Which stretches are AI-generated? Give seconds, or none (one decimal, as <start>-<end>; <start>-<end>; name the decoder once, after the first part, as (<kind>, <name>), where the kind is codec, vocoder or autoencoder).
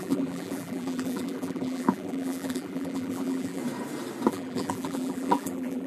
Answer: 0.0-3.6 (vocoder, BigVGAN v2); 4.3-5.9